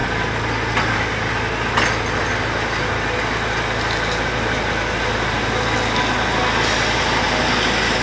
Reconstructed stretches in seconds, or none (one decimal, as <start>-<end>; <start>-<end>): none